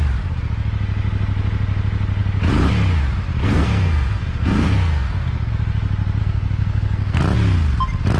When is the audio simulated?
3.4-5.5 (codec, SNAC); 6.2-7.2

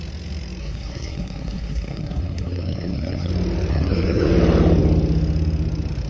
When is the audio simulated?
0.6-3.3 (codec, SNAC); 3.7-4.3

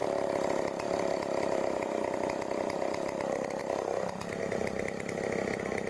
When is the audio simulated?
none

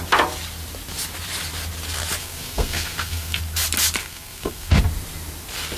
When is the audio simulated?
2.2-3.4 (codec, SNAC); 4.0-4.8